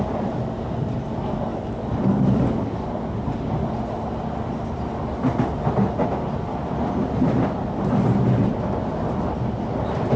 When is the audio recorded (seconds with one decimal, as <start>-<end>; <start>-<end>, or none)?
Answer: 0.0-1.5; 2.9-10.2